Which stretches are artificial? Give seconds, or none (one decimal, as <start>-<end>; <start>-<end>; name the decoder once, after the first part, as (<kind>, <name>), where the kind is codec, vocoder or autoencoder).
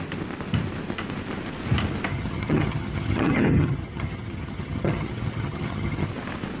2.1-6.1 (vocoder, HiFi-GAN)